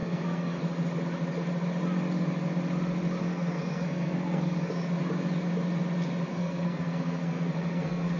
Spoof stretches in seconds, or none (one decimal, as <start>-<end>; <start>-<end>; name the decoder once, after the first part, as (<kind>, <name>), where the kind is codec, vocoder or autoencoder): 0.0-0.6 (codec, SNAC); 3.2-4.7; 6.3-8.2